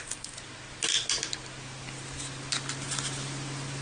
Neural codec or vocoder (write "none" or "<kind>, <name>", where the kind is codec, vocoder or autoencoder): none